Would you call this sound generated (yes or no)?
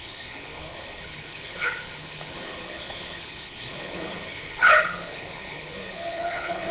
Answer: yes